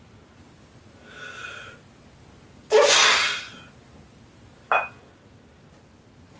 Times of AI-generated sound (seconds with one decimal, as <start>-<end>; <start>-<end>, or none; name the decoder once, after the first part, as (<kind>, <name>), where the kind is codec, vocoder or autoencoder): none